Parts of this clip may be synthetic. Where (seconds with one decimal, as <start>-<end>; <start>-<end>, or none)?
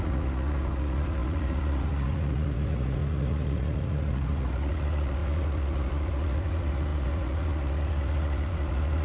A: 0.0-9.0